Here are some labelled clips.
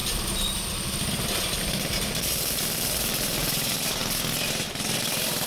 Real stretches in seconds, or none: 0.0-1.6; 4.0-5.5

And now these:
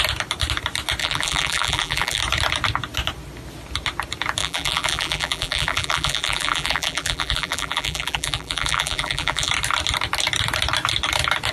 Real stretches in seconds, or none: 0.0-1.0; 2.2-4.4; 9.5-11.5

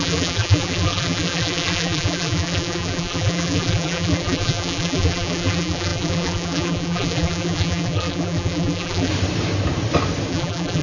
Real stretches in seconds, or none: 9.1-10.3

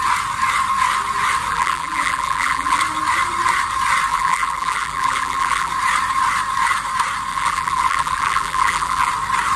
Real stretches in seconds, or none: 0.0-1.5; 2.8-4.1; 5.7-7.3; 9.1-9.6

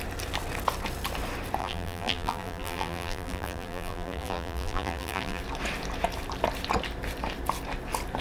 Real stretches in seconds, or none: 0.0-1.6; 5.4-8.2

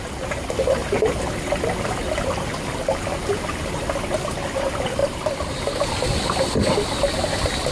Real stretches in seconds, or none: 0.0-7.7